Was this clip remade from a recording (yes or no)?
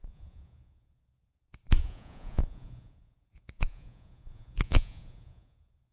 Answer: yes